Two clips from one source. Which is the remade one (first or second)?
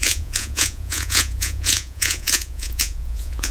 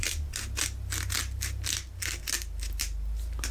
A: first